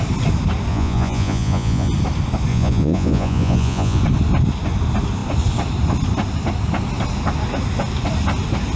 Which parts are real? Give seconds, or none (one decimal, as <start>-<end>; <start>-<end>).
0.0-0.7; 1.9-2.5; 4.0-8.8

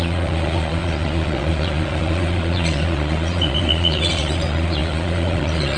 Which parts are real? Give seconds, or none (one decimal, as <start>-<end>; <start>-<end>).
none

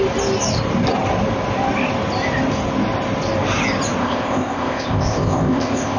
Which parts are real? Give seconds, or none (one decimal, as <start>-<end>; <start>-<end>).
0.0-4.0

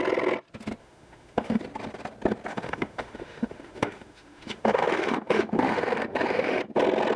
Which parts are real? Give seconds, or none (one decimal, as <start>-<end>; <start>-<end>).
0.0-0.8; 1.6-2.5; 6.6-7.2

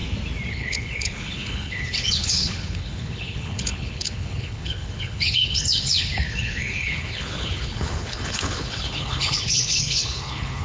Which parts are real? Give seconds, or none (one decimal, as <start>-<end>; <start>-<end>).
0.0-0.5